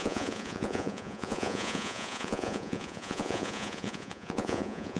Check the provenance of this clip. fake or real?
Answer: fake